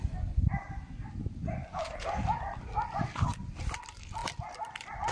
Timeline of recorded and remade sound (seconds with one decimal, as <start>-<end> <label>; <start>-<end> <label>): 0.0-1.6 recorded; 1.6-2.6 remade; 2.6-4.2 recorded; 4.2-5.1 remade